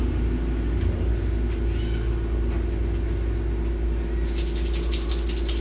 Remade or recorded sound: recorded